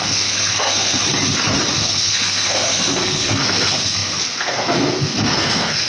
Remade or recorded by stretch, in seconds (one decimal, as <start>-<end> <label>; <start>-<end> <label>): 0.0-1.0 remade; 1.0-1.7 recorded; 1.7-5.9 remade